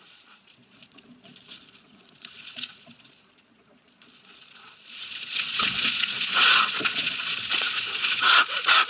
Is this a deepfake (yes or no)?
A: yes